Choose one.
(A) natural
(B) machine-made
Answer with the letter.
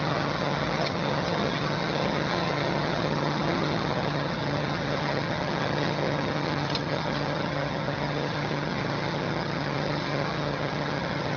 B